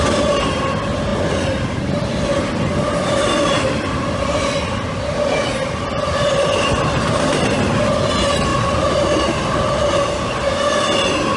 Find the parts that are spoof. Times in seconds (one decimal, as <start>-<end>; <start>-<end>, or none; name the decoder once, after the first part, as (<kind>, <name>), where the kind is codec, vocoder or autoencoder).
none